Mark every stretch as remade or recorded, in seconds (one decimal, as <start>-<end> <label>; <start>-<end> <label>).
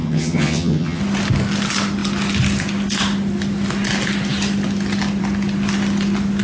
0.0-1.0 remade; 1.0-6.4 recorded